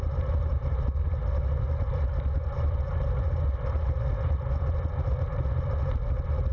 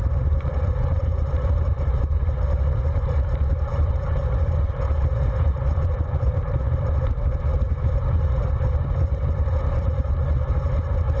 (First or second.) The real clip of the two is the first